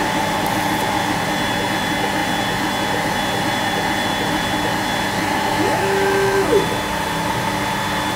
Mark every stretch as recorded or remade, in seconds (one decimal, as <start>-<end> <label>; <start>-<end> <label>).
0.0-5.5 recorded; 5.5-6.5 remade; 6.5-8.2 recorded